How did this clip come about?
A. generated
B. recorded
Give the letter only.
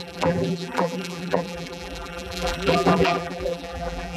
A